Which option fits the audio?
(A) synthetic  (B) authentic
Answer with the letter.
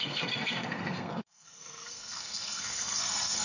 A